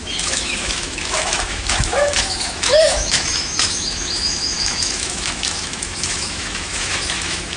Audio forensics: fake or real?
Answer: fake